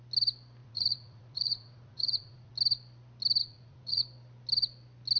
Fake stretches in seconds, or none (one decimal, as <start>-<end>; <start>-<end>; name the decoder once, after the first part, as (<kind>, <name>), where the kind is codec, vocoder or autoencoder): 0.6-2.5 (vocoder, Vocos); 3.4-4.0